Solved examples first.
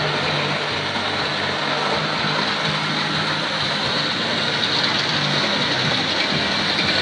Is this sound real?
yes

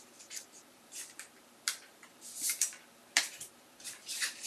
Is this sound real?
no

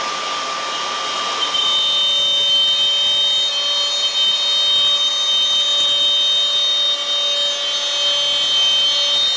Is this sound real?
yes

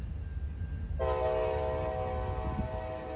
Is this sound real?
yes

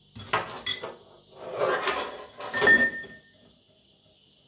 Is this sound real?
yes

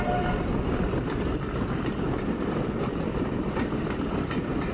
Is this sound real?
no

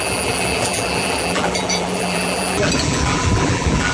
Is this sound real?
no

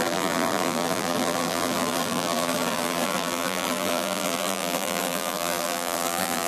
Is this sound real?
no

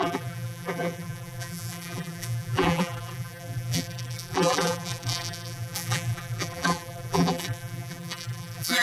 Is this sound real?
no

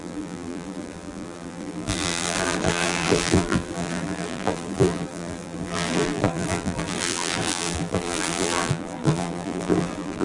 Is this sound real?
no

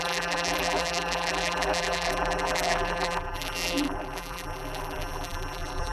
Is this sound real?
no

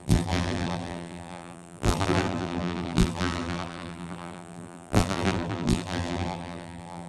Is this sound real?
no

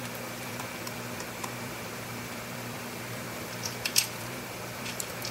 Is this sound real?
no